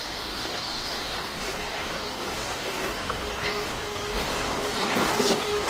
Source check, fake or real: fake